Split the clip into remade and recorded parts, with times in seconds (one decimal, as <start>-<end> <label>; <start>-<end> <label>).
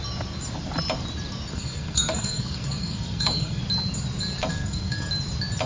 0.0-1.5 recorded; 1.5-3.6 remade; 3.6-4.5 recorded; 4.5-5.1 remade; 5.1-5.7 recorded